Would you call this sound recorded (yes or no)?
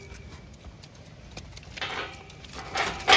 yes